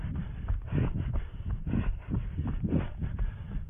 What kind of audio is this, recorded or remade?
recorded